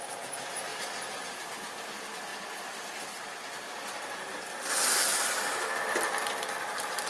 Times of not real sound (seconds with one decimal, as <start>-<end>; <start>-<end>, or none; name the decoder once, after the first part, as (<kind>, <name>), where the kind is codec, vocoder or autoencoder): 0.0-0.7 (vocoder, BigVGAN v2); 1.4-2.3; 6.6-7.1